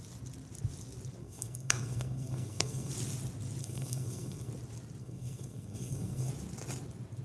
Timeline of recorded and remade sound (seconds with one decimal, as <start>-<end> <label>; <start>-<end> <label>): 0.0-1.2 recorded; 1.2-2.9 remade; 2.9-3.6 recorded; 3.6-4.5 remade; 4.5-5.0 recorded; 5.0-6.3 remade; 6.3-7.2 recorded